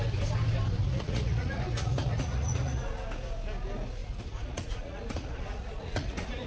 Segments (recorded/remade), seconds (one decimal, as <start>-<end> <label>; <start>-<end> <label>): 0.0-0.8 recorded; 0.8-2.8 remade; 2.8-4.0 recorded; 4.0-6.5 remade